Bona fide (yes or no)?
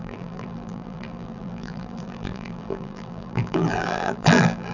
no